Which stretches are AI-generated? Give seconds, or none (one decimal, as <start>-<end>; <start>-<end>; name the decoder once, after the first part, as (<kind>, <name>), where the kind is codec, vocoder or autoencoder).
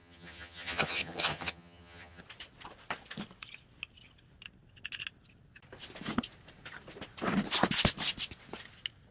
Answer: 0.0-2.2 (vocoder, HiFi-GAN)